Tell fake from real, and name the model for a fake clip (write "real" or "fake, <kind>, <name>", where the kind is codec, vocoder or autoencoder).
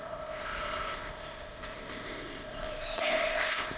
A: fake, codec, ZipCodec